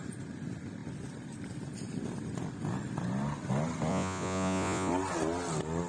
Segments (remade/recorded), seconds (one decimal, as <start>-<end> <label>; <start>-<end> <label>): 0.0-3.9 recorded; 3.9-4.9 remade; 4.9-5.9 recorded